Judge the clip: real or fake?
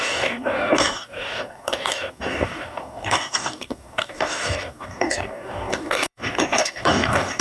fake